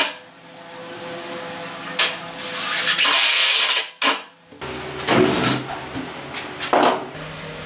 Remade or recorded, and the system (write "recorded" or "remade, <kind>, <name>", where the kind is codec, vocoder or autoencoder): recorded